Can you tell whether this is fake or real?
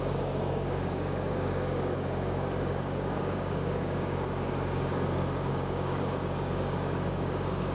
fake